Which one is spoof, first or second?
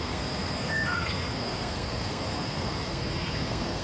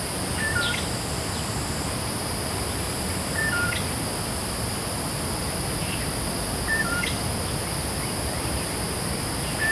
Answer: first